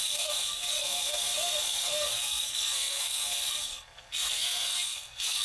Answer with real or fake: fake